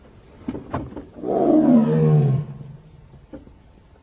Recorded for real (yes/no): yes